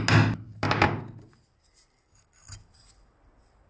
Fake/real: real